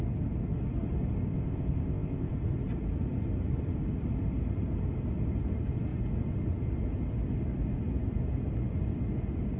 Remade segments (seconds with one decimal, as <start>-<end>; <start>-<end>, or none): 1.3-2.3